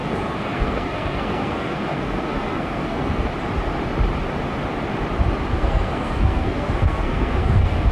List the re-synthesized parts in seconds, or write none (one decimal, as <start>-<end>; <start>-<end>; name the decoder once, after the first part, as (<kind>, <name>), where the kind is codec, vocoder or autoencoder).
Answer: 0.0-3.3 (codec, SNAC); 5.5-7.9